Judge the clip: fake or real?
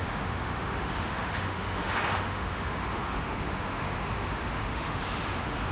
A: fake